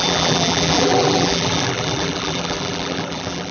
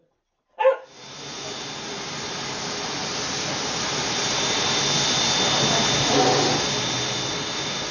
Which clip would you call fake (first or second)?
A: first